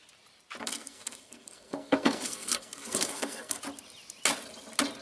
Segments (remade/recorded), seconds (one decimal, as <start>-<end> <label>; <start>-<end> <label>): 0.0-0.6 recorded; 0.6-3.6 remade; 3.6-5.0 recorded